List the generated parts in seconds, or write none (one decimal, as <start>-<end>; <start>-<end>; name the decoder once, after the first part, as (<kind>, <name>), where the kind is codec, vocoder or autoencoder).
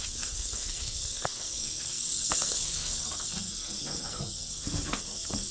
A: 0.0-5.5 (codec, SNAC)